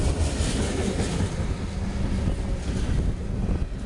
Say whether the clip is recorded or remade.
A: recorded